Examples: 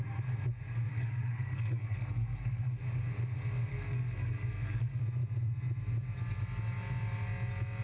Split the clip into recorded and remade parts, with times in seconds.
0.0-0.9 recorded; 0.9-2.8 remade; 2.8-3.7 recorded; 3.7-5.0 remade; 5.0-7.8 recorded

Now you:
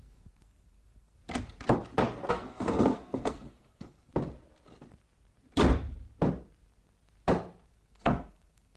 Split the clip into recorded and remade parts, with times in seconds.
0.0-1.2 remade; 1.2-2.3 recorded; 2.3-4.1 remade; 4.1-7.7 recorded; 7.7-8.8 remade

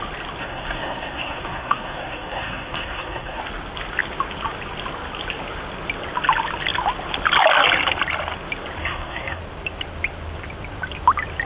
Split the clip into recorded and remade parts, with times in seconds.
0.0-0.4 recorded; 0.4-3.4 remade; 3.4-8.8 recorded; 8.8-9.4 remade; 9.4-11.5 recorded

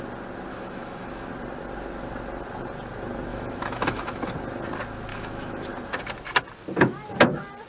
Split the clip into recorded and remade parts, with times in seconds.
0.0-0.5 recorded; 0.5-1.3 remade; 1.3-3.3 recorded; 3.3-4.3 remade; 4.3-5.1 recorded; 5.1-5.7 remade; 5.7-7.7 recorded

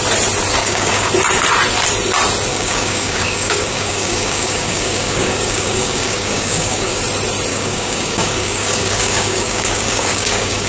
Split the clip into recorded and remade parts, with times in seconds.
0.0-0.6 recorded; 0.6-1.1 remade; 1.1-2.5 recorded; 2.5-7.0 remade; 7.0-7.5 recorded; 7.5-10.7 remade

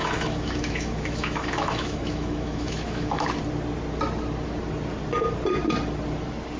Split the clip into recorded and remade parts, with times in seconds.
0.0-3.3 remade; 3.3-6.6 recorded

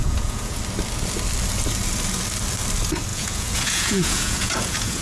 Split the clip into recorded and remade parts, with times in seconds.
0.0-0.6 remade; 0.6-3.1 recorded; 3.1-5.0 remade